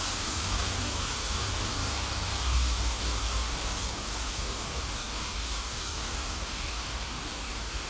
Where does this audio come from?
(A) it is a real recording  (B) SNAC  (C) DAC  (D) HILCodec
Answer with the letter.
C